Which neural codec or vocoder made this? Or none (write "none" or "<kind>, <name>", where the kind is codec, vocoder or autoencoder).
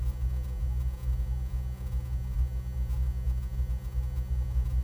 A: vocoder, Vocos